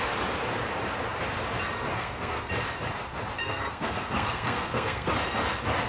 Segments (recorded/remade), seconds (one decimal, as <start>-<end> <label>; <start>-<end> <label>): 0.0-1.9 recorded; 1.9-2.5 remade; 2.5-3.4 recorded; 3.4-5.1 remade; 5.1-5.9 recorded